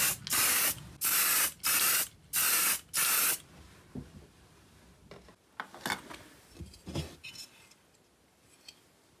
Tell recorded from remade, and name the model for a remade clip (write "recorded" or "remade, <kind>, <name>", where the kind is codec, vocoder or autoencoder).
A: recorded